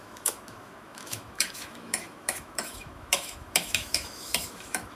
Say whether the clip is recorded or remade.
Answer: remade